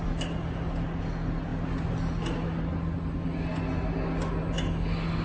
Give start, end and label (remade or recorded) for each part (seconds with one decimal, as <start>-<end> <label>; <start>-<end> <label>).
0.0-5.2 recorded